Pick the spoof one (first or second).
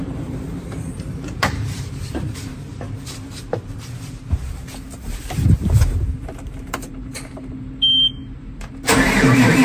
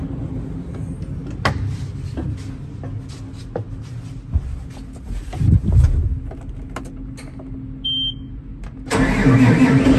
first